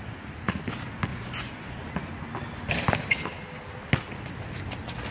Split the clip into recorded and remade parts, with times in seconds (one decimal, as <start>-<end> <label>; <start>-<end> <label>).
0.0-1.1 recorded; 1.1-1.9 remade; 1.9-5.1 recorded